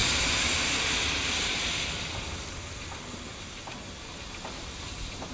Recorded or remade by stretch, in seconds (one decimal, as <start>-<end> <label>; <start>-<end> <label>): 0.0-5.3 recorded